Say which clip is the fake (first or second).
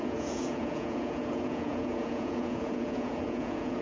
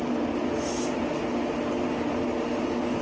first